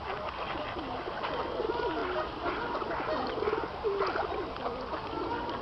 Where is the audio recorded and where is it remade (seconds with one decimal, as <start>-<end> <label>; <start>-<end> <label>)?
0.0-5.6 recorded